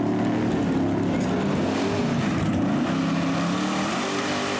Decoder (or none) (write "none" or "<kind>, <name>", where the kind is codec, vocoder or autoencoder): none